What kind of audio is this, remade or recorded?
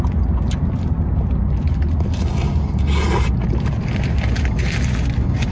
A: recorded